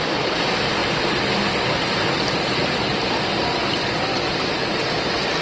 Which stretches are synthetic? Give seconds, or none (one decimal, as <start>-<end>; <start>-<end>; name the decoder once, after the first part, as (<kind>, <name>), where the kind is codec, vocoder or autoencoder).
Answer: none